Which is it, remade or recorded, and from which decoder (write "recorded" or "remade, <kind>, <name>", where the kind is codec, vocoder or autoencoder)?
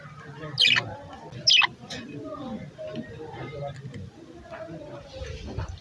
recorded